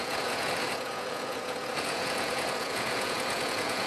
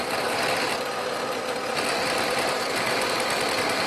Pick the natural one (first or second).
second